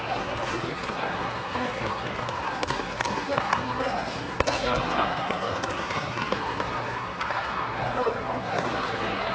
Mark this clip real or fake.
fake